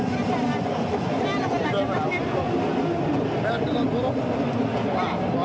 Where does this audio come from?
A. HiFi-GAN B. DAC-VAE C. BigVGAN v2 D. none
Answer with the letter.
D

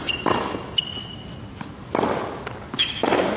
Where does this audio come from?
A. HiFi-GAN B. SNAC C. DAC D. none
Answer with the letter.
D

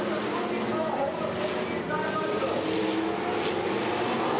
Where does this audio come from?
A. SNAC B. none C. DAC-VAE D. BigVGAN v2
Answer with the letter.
B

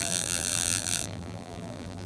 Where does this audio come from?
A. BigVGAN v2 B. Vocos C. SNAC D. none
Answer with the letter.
A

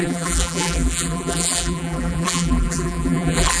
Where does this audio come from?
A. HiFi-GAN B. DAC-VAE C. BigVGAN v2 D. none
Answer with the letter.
C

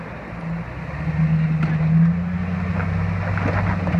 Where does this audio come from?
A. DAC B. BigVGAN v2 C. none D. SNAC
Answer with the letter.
C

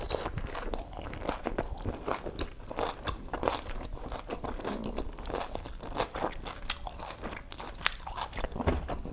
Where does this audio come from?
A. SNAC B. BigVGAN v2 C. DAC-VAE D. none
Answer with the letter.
B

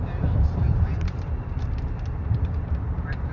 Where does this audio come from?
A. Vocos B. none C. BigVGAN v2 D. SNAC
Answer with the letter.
C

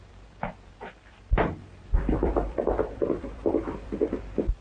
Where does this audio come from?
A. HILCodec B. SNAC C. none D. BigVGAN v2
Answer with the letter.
D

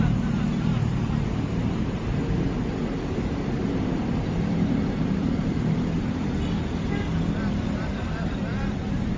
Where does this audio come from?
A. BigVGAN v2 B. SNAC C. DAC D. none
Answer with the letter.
A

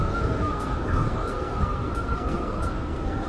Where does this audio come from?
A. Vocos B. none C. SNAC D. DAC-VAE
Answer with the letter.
C